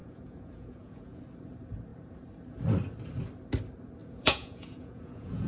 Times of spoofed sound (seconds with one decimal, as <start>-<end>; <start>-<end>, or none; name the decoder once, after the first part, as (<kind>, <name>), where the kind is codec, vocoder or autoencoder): 0.0-1.2 (vocoder, Vocos); 4.0-5.5